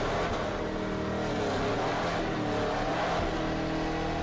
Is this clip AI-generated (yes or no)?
no